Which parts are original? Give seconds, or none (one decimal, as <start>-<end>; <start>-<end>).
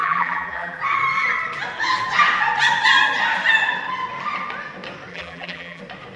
0.8-5.1; 5.8-6.2